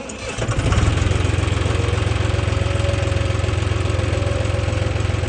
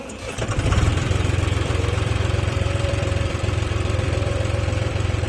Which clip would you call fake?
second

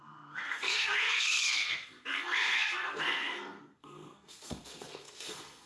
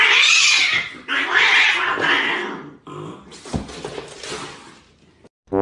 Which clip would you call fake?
first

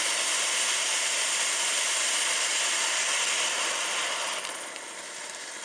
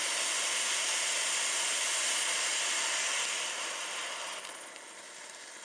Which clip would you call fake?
first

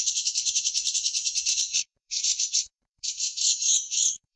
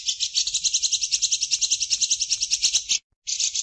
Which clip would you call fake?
first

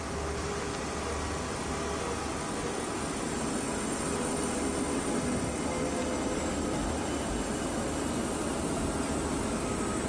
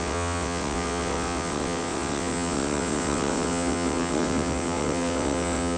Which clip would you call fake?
second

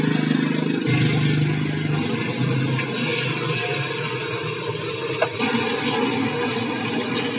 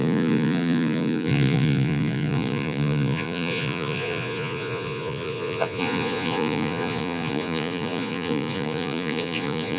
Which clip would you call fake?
second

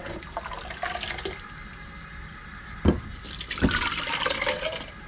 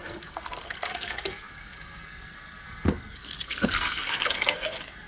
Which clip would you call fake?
second